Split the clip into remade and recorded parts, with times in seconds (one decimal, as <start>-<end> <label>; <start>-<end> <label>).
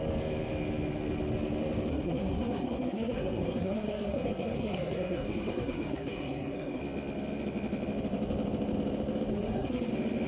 0.0-1.9 recorded; 1.9-6.8 remade; 6.8-9.3 recorded; 9.3-9.9 remade; 9.9-10.3 recorded